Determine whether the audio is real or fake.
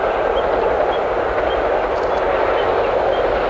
real